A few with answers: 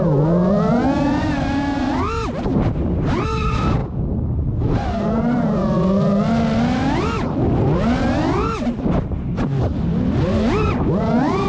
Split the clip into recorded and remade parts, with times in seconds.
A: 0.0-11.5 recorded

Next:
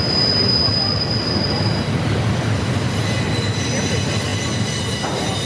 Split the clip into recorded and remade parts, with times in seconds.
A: 0.0-5.5 recorded

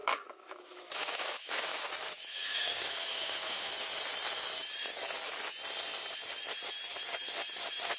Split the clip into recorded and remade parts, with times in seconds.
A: 0.0-1.9 remade; 1.9-2.3 recorded; 2.3-3.7 remade; 3.7-8.0 recorded

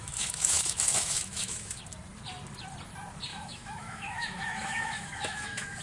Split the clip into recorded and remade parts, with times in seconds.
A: 0.0-1.8 remade; 1.8-3.3 recorded; 3.3-5.8 remade

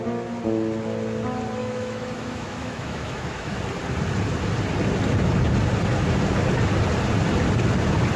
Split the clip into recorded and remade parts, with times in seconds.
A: 0.0-1.6 recorded; 1.6-3.6 remade; 3.6-8.2 recorded

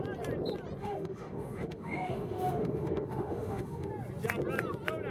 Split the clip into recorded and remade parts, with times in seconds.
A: 0.0-0.8 recorded; 0.8-3.9 remade; 3.9-5.1 recorded

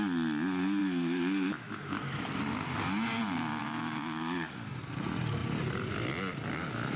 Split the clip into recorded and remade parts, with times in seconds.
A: 0.0-0.8 recorded; 0.8-2.4 remade; 2.4-3.6 recorded; 3.6-4.5 remade; 4.5-7.0 recorded